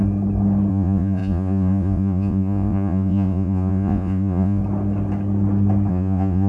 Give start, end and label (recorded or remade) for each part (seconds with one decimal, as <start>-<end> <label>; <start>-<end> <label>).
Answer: 0.0-0.7 recorded; 0.7-4.6 remade; 4.6-5.9 recorded; 5.9-6.5 remade